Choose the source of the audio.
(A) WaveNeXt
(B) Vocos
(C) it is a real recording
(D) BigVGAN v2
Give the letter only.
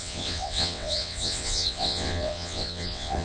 A